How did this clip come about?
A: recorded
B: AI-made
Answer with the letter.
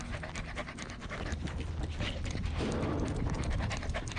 A